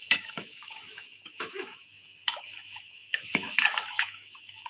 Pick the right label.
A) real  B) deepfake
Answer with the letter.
B